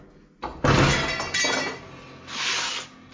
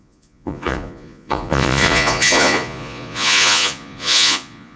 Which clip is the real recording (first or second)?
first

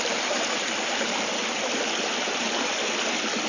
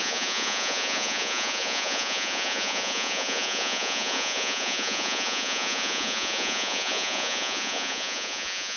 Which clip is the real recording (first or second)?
first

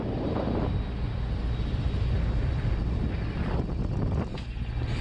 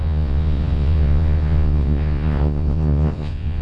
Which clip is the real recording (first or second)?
first